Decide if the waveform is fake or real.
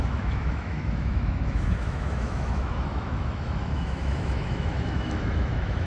fake